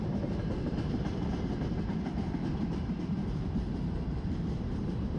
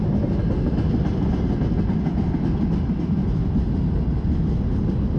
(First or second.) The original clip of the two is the second